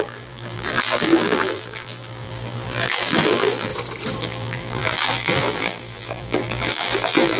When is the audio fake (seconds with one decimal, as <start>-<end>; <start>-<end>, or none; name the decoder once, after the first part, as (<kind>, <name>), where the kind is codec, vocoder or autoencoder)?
0.0-3.7 (vocoder, BigVGAN v2); 4.2-7.4